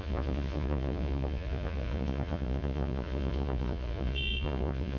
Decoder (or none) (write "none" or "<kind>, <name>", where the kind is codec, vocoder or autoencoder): vocoder, Vocos